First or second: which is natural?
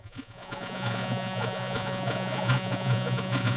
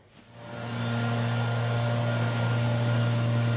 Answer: second